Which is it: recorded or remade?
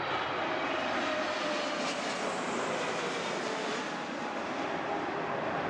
remade